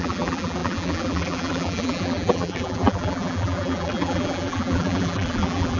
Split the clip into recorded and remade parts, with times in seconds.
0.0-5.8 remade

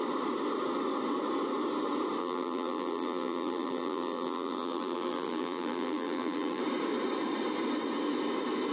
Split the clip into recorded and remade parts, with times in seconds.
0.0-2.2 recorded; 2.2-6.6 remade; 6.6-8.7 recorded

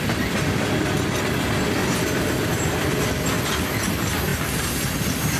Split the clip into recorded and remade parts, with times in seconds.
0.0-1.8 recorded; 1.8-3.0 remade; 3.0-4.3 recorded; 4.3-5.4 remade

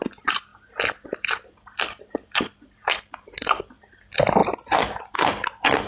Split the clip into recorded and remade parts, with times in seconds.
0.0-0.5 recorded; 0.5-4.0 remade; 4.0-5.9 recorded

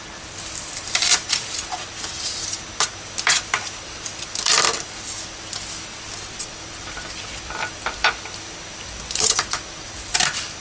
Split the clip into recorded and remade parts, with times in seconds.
0.0-1.9 remade; 1.9-3.8 recorded; 3.8-10.6 remade

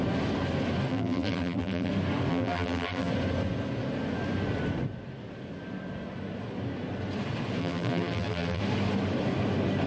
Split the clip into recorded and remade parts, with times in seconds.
0.0-0.9 recorded; 0.9-1.9 remade; 1.9-2.3 recorded; 2.3-3.1 remade; 3.1-7.6 recorded; 7.6-8.6 remade; 8.6-9.9 recorded